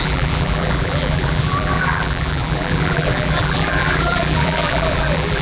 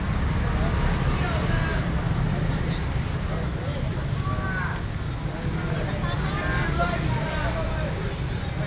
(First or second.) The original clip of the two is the second